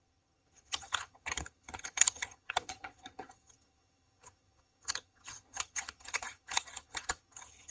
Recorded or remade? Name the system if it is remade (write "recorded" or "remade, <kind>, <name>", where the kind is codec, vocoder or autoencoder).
remade, vocoder, HiFi-GAN